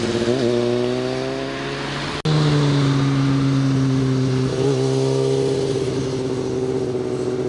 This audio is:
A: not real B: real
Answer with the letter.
B